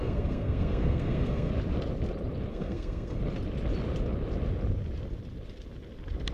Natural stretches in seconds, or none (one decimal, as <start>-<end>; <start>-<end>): 1.5-2.5; 3.2-6.3